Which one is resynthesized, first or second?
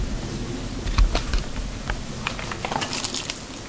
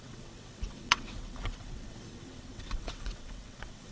second